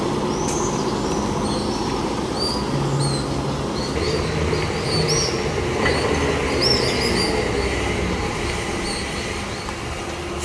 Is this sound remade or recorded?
recorded